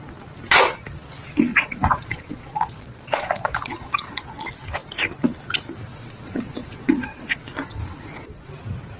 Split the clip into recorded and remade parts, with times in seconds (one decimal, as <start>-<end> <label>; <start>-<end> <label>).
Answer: 0.0-1.5 recorded; 1.5-4.5 remade; 4.5-5.9 recorded; 5.9-8.5 remade; 8.5-9.0 recorded